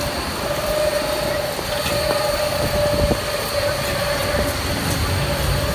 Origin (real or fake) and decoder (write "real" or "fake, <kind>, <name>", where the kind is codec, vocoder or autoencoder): real